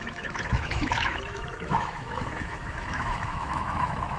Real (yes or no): no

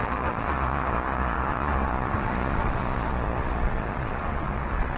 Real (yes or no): no